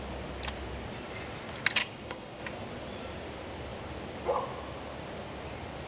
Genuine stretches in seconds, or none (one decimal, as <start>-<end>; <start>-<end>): 0.0-1.8; 2.4-5.9